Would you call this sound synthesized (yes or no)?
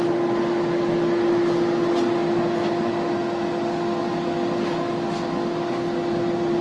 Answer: no